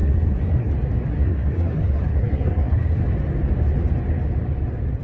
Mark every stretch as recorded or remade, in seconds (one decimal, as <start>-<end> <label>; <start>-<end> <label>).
0.0-0.7 remade; 0.7-1.1 recorded; 1.1-3.0 remade; 3.0-5.0 recorded